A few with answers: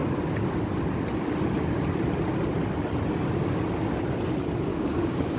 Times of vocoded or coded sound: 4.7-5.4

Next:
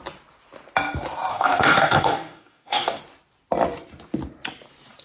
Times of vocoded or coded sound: 1.3-3.0

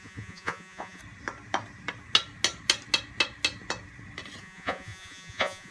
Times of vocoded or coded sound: 0.0-1.0; 4.4-5.7

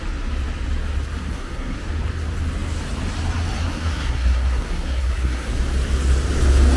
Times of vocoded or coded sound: 1.2-1.8; 3.6-5.5

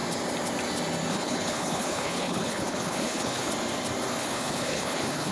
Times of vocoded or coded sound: 1.1-3.5; 4.2-5.3